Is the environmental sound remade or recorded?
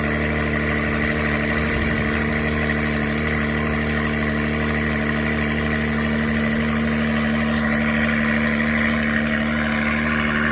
recorded